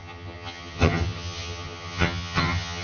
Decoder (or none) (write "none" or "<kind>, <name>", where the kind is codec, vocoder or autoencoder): vocoder, HiFi-GAN